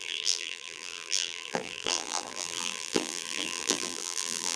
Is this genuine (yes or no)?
no